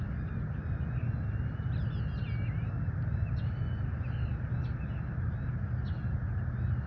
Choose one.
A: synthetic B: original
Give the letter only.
B